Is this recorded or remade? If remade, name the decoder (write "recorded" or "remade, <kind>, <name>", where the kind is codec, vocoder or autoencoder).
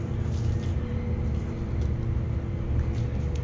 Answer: recorded